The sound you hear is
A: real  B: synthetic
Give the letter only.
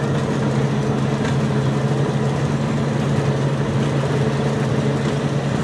A